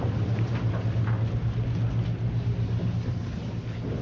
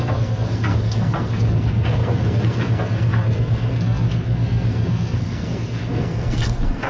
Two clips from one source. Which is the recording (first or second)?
first